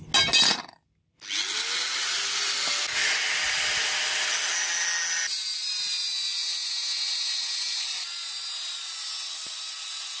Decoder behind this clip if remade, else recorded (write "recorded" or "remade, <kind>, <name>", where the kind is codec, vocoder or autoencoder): recorded